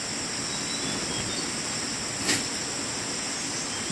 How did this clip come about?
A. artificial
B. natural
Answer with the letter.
B